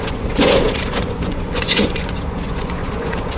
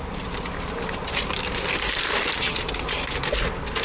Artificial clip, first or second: first